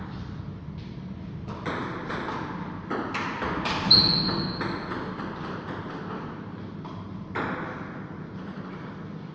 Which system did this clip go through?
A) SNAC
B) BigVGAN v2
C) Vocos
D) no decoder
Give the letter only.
D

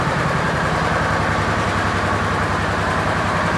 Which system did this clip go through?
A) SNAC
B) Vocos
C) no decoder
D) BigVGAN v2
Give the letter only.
D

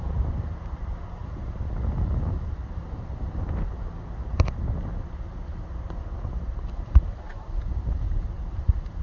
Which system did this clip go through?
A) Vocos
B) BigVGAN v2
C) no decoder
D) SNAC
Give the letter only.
C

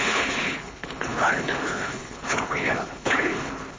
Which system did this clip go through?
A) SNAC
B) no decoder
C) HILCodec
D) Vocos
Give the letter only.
C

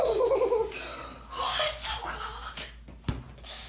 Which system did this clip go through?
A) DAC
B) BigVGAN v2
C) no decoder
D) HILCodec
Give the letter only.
C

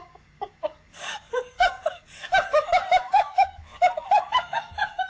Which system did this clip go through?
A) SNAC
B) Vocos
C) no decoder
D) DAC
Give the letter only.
D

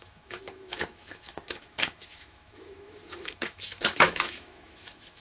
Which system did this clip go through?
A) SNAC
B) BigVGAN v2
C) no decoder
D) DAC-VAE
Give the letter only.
D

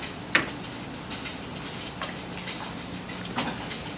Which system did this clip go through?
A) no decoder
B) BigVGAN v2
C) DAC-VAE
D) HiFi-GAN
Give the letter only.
A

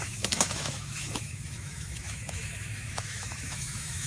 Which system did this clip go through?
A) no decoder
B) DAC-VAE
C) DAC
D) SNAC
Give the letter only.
B